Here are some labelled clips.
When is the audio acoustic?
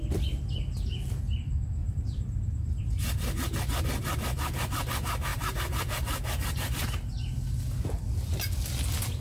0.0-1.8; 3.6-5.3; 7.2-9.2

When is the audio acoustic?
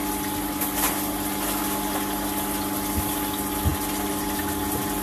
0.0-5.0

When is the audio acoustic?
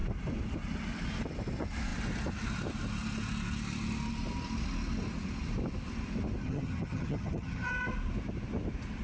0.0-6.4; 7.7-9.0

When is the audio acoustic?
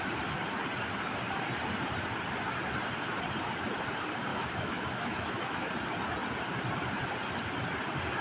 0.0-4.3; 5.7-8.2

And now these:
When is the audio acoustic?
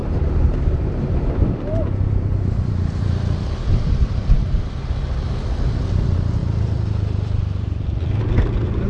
5.0-6.4; 8.2-8.9